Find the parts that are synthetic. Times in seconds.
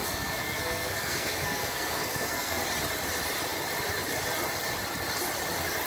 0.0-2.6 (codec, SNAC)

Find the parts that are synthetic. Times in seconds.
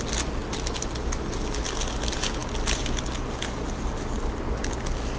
none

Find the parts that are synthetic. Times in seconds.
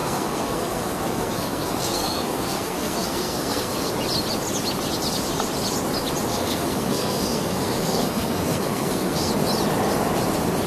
0.0-3.9 (codec, SNAC); 6.3-9.3